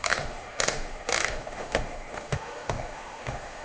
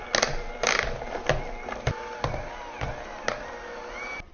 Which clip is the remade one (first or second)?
first